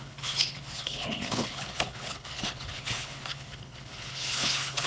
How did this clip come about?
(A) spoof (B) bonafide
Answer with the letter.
A